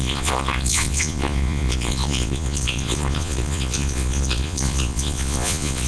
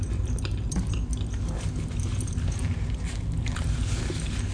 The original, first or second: second